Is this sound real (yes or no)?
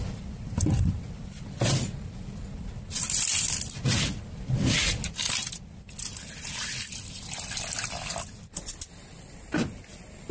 yes